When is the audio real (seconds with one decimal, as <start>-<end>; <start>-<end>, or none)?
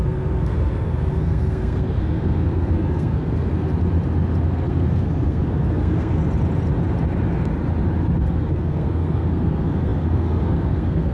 3.7-4.5; 6.2-8.2